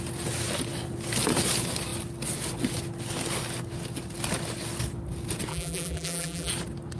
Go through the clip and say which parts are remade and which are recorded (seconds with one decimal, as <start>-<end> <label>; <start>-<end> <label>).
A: 0.0-5.5 recorded; 5.5-6.5 remade; 6.5-7.0 recorded